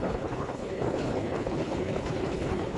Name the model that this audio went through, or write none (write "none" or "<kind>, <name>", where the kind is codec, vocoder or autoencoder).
codec, HILCodec